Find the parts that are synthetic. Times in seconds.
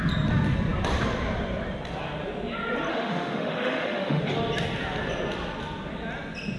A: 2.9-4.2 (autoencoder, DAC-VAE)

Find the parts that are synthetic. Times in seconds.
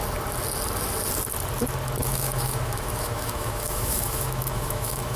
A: 2.0-5.2 (autoencoder, DAC-VAE)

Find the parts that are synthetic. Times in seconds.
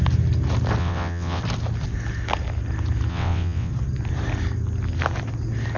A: 0.8-1.4 (vocoder, WaveNeXt); 3.1-3.7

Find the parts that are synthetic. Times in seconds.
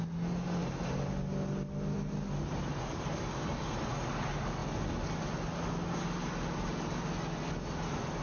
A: none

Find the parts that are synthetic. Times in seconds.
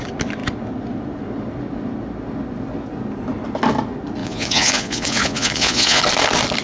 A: 4.2-6.0 (vocoder, Vocos)